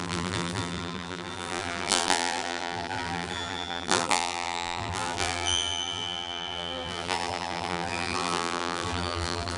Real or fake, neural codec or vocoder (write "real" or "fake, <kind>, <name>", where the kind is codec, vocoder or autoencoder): fake, vocoder, BigVGAN v2